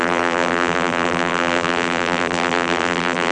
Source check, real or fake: fake